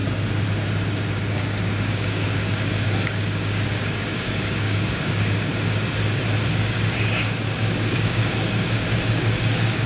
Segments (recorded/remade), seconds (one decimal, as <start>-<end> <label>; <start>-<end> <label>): 0.0-1.3 recorded; 1.3-5.5 remade; 5.5-6.5 recorded; 6.5-9.9 remade